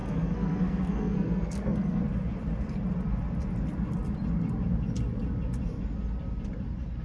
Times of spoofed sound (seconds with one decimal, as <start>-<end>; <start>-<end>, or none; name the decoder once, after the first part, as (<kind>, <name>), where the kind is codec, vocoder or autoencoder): 0.0-2.0 (codec, SNAC)